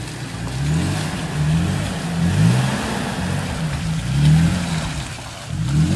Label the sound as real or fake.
real